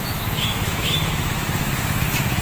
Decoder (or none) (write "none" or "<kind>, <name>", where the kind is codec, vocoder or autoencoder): autoencoder, DAC-VAE